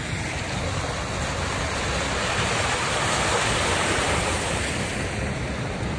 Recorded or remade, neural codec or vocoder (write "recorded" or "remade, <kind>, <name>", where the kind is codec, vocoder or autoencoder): recorded